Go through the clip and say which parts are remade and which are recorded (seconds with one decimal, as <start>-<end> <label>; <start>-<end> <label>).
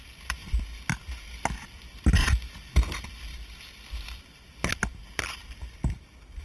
0.0-6.4 recorded